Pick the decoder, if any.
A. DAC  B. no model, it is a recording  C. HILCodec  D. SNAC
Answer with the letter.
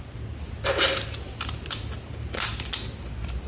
B